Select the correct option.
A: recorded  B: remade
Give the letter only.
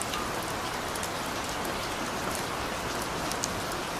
A